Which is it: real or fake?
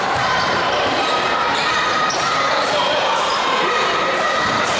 fake